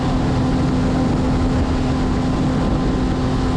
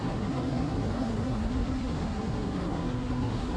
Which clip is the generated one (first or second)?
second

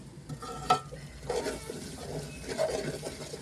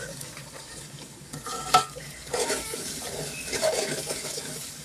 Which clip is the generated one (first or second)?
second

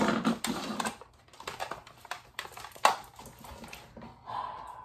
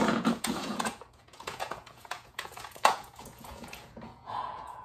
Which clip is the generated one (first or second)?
second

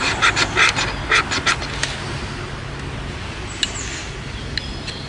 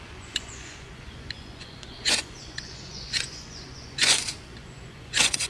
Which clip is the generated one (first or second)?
second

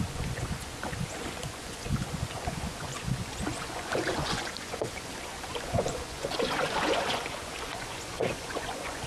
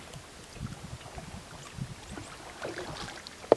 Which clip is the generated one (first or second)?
first